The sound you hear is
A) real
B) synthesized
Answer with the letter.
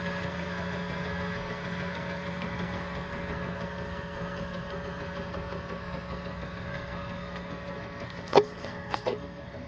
B